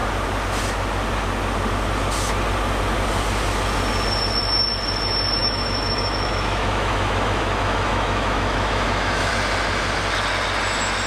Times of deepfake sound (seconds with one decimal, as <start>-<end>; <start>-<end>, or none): 5.4-9.3